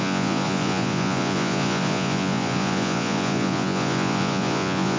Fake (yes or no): yes